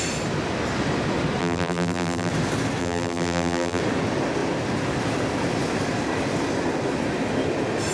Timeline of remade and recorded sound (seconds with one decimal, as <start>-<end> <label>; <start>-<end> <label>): 0.0-1.4 recorded; 1.4-2.3 remade; 2.3-2.8 recorded; 2.8-3.8 remade; 3.8-7.9 recorded